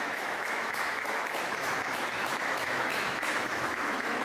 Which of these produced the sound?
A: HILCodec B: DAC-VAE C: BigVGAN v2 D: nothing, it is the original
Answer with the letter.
B